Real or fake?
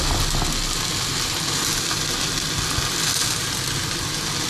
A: real